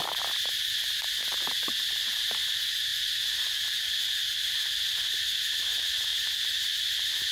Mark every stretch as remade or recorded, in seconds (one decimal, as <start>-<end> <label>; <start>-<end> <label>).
0.0-2.9 recorded; 2.9-3.9 remade; 3.9-7.3 recorded